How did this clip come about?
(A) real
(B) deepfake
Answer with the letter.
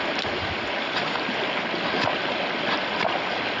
A